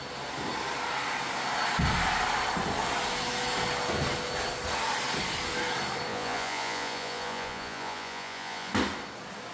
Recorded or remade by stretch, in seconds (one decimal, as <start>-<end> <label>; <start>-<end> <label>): 0.0-6.1 recorded; 6.1-8.7 remade; 8.7-9.5 recorded